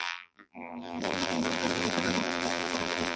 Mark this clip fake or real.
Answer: fake